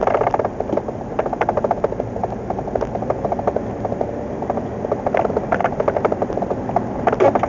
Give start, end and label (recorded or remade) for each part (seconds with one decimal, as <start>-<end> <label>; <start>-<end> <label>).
0.0-7.5 recorded